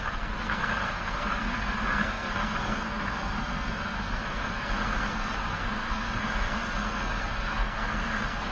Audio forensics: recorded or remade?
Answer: remade